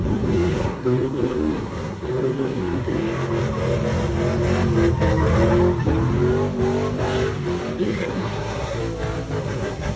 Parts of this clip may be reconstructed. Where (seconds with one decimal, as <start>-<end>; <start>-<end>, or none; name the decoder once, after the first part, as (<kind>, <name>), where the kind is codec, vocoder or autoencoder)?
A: 0.0-3.0 (codec, SNAC); 7.8-8.8; 9.4-10.0